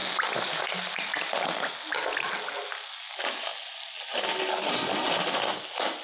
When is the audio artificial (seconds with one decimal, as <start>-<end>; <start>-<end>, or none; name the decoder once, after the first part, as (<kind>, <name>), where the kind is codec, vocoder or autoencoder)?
none